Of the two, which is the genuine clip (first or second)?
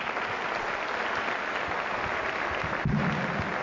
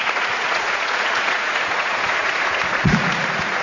first